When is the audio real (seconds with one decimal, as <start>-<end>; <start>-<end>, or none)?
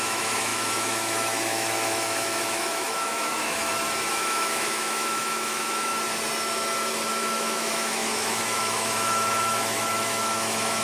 3.6-4.1; 5.9-7.1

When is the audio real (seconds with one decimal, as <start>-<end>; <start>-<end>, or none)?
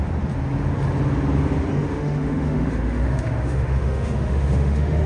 0.0-1.7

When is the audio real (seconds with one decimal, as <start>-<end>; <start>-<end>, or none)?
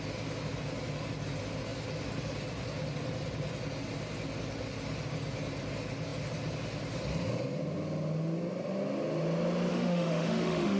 0.0-9.7